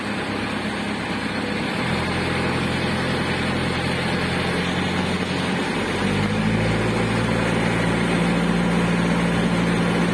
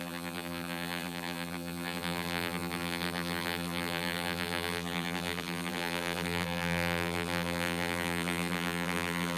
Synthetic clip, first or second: second